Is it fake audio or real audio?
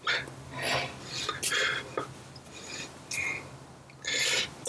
real